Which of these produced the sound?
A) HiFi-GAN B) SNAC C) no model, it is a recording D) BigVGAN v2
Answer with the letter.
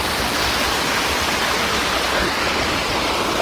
C